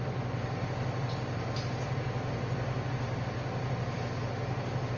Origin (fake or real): real